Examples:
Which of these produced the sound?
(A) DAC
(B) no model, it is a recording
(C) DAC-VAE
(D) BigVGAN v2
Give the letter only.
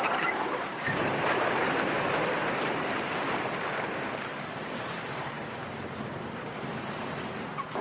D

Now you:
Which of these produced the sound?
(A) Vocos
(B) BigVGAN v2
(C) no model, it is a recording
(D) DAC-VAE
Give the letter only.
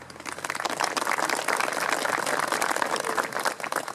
C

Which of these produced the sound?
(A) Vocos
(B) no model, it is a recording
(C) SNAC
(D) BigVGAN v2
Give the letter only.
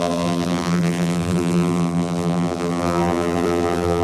D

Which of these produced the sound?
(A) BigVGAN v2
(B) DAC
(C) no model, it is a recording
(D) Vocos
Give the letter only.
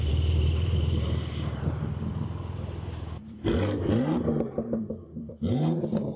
A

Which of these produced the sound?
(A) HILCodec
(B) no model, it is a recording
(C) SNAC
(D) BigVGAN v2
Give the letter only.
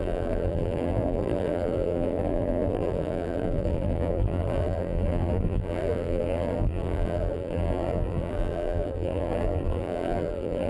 D